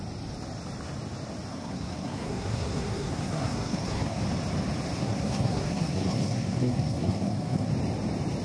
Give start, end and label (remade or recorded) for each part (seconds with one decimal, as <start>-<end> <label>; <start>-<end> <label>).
0.0-1.5 recorded; 1.5-4.2 remade; 4.2-5.0 recorded; 5.0-7.7 remade; 7.7-8.4 recorded